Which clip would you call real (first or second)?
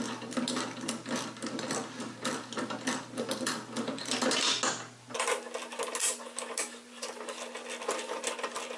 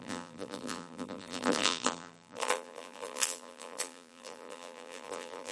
first